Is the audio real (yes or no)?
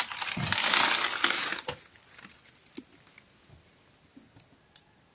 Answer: yes